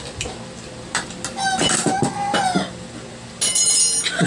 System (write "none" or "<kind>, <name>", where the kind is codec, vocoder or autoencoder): none